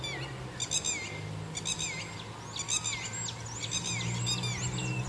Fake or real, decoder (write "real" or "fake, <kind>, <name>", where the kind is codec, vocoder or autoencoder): real